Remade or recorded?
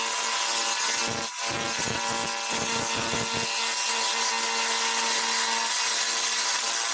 recorded